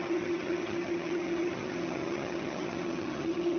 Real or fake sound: fake